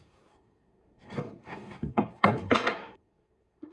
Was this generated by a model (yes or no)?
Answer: yes